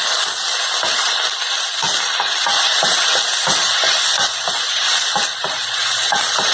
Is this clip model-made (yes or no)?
no